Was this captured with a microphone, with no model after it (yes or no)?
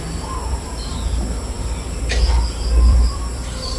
no